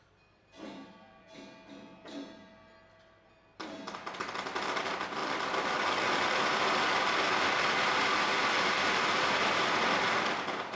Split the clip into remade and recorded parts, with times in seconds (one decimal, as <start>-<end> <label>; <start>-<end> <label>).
0.0-10.7 recorded